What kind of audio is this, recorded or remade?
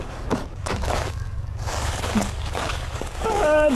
remade